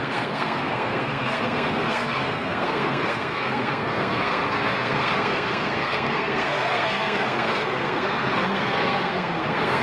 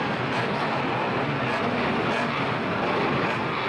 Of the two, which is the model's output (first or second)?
first